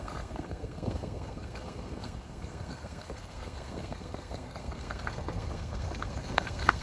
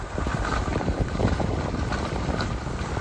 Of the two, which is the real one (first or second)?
second